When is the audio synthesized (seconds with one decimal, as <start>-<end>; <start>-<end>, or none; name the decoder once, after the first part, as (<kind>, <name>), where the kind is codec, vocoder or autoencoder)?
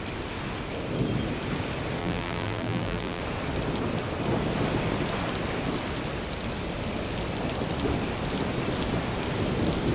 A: 2.0-3.2 (vocoder, BigVGAN v2)